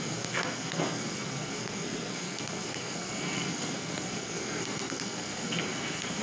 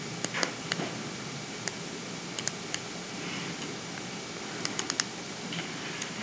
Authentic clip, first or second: second